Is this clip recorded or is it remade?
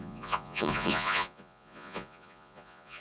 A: remade